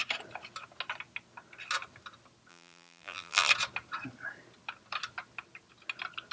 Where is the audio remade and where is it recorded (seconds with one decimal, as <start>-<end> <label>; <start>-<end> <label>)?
0.0-2.5 recorded; 2.5-3.5 remade; 3.5-6.3 recorded